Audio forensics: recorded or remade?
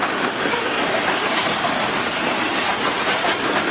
recorded